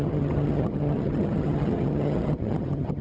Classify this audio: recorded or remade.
remade